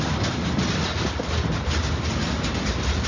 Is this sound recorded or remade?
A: recorded